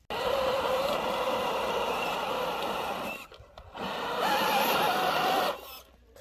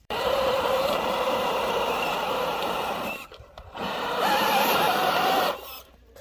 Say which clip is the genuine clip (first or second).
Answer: first